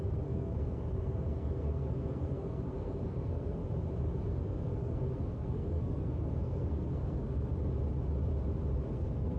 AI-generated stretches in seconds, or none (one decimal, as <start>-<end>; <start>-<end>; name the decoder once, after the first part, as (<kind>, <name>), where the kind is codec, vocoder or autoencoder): 0.0-3.6 (codec, SNAC); 4.2-7.5; 8.9-9.4